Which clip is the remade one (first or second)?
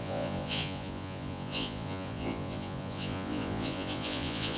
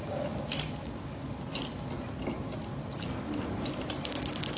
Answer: first